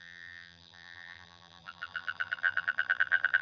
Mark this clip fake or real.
fake